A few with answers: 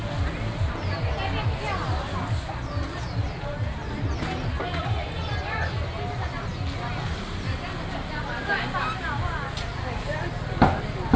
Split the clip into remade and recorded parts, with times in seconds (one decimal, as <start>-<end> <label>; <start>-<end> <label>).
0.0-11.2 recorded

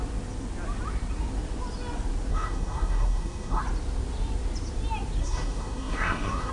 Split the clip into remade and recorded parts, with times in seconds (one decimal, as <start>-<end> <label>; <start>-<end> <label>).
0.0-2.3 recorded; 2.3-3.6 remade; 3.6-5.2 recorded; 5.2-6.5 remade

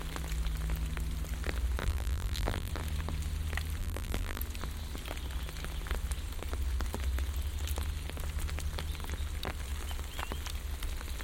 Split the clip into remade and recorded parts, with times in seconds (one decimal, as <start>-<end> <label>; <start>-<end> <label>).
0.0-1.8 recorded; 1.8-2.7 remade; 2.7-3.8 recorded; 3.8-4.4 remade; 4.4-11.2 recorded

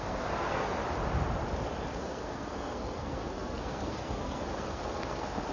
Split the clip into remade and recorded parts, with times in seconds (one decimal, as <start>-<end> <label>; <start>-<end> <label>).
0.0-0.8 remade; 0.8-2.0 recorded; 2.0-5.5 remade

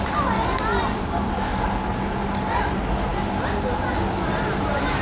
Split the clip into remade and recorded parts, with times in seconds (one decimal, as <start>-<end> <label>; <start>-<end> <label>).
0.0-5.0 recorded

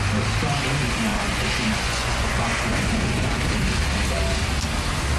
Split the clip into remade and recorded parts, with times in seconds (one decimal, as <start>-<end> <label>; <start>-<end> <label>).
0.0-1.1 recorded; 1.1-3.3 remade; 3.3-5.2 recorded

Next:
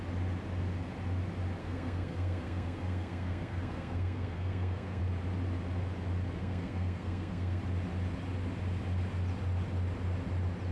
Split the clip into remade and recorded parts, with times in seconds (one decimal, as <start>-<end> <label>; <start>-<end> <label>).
0.0-1.6 recorded; 1.6-5.0 remade; 5.0-6.4 recorded; 6.4-7.6 remade; 7.6-10.7 recorded